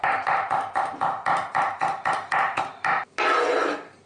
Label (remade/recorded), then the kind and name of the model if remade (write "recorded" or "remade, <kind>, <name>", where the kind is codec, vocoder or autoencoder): recorded